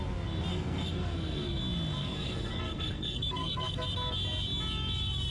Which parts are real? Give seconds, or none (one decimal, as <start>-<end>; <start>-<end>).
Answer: 0.0-0.5; 1.6-2.0; 3.8-5.3